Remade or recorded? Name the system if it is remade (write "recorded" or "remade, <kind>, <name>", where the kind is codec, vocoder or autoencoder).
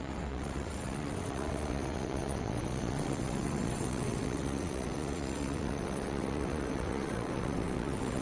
remade, vocoder, WaveNeXt